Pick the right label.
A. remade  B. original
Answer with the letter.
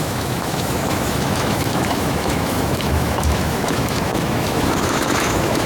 A